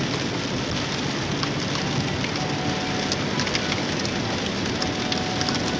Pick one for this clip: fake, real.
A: real